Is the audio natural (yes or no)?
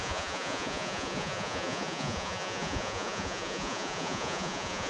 no